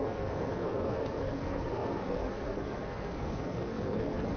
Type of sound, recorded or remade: remade